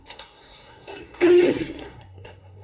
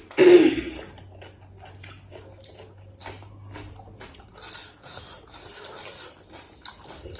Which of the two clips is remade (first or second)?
first